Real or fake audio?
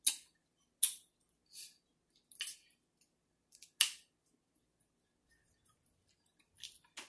real